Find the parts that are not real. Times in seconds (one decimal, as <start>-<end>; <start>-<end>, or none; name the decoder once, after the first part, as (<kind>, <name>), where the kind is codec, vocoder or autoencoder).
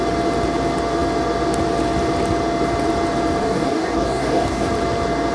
3.4-4.7 (codec, DAC)